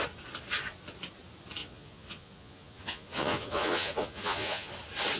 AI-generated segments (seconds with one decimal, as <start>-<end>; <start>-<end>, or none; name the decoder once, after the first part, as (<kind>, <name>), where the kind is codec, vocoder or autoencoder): 1.6-4.7 (vocoder, Vocos)